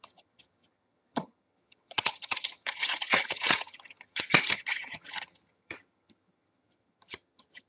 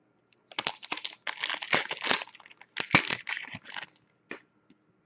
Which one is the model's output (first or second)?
first